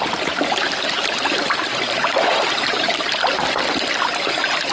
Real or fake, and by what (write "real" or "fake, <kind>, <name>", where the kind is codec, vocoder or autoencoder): fake, vocoder, BigVGAN v2